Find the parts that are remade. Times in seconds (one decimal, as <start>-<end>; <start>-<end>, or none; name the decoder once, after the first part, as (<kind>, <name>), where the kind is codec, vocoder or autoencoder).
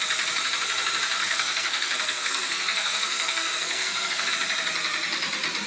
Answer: 1.2-4.3 (codec, SNAC)